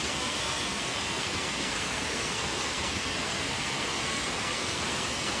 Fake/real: fake